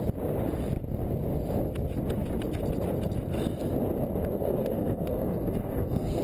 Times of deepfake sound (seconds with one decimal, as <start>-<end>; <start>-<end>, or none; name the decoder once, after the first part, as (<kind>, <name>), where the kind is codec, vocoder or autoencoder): 4.2-6.2 (codec, SNAC)